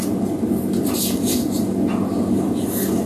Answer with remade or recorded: recorded